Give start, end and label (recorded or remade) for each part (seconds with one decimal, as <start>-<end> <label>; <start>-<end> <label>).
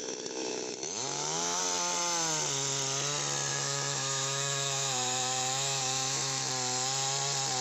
0.0-1.6 remade; 1.6-3.5 recorded; 3.5-6.5 remade; 6.5-7.6 recorded